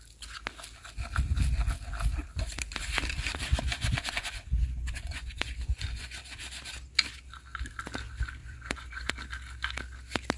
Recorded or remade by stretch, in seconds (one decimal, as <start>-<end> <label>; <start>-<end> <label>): 0.0-3.7 recorded; 3.7-6.2 remade; 6.2-8.4 recorded; 8.4-9.1 remade; 9.1-10.4 recorded